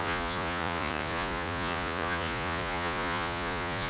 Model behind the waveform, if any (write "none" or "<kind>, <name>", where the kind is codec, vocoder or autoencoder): vocoder, Vocos